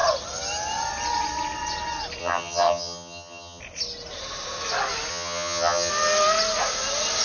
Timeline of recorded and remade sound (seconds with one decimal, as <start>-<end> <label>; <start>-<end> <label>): 0.0-2.2 recorded; 2.2-3.6 remade; 3.6-5.1 recorded; 5.1-5.9 remade; 5.9-7.2 recorded